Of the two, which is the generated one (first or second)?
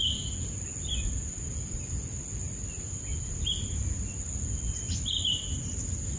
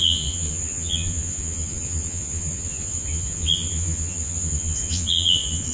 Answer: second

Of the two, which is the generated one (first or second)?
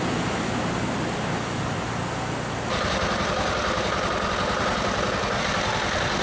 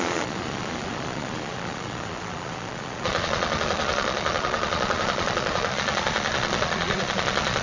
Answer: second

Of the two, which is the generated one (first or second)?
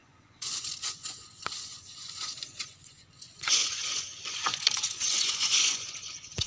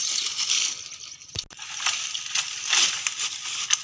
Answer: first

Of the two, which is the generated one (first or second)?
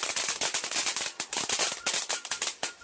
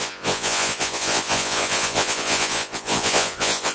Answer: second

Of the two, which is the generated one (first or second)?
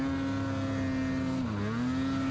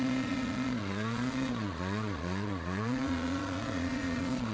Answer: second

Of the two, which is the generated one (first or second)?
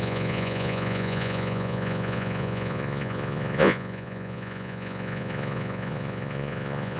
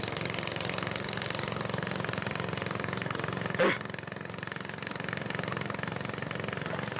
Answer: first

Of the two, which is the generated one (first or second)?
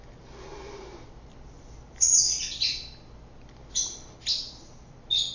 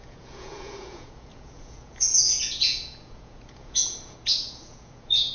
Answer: second